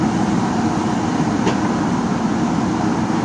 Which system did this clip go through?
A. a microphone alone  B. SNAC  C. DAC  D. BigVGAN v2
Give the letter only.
A